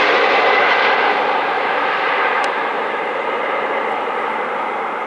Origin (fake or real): fake